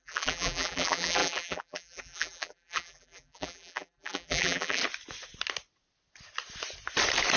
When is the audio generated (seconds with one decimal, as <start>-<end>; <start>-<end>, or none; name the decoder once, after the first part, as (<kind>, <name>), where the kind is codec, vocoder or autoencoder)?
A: 0.0-4.8 (vocoder, BigVGAN v2)